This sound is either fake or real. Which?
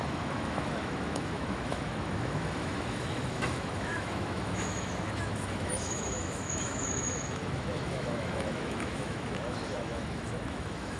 fake